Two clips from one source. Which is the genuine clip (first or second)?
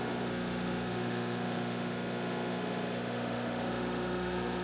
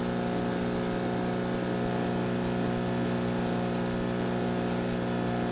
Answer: second